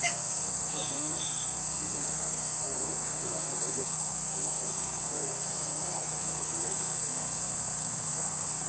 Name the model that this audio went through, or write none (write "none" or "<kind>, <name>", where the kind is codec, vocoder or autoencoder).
codec, SNAC